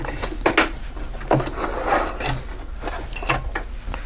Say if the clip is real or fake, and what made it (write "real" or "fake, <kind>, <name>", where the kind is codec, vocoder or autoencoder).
real